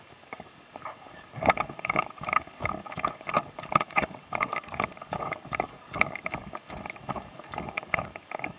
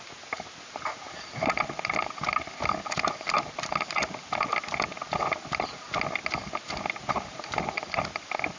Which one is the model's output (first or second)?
first